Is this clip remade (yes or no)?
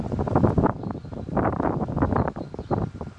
yes